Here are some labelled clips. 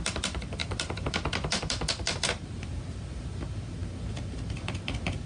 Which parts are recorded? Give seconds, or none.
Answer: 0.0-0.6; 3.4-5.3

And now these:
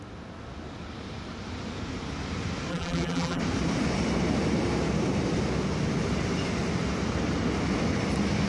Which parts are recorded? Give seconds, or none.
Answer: 0.0-2.7; 3.4-8.5

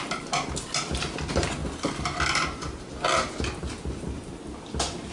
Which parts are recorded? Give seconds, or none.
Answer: 0.0-5.1

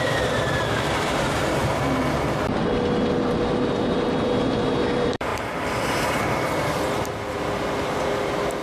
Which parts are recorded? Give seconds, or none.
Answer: 1.6-3.2

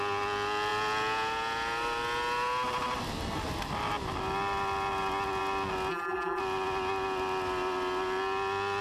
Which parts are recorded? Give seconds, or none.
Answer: 0.0-5.9; 6.4-8.8

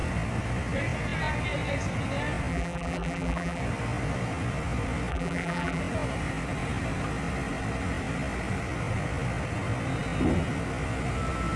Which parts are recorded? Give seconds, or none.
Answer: 0.0-2.5; 3.6-5.1; 5.8-11.6